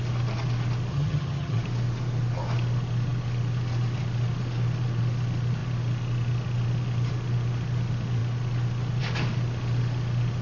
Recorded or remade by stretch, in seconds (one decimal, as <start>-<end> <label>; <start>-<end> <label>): 0.0-0.9 recorded; 0.9-1.6 remade; 1.6-10.4 recorded